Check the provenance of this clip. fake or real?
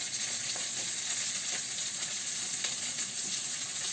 fake